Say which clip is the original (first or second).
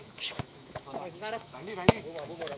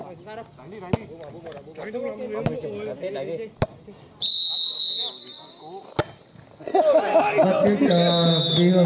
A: second